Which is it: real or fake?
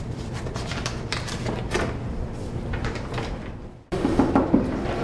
fake